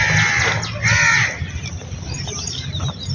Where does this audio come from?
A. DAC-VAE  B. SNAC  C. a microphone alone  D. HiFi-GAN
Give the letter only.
C